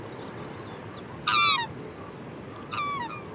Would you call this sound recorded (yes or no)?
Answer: yes